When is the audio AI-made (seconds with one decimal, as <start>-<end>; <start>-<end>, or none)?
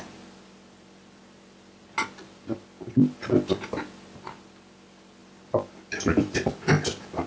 5.2-6.5